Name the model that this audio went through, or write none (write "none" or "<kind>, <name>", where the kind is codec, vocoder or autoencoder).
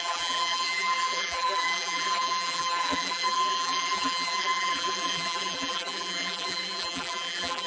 vocoder, BigVGAN v2